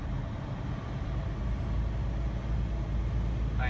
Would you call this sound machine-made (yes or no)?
no